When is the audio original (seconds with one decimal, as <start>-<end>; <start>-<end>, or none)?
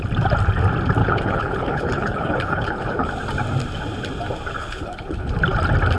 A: 0.0-1.0; 3.1-4.6; 5.3-6.0